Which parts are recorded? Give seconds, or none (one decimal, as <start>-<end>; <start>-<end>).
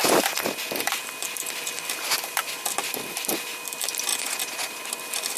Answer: 0.0-5.4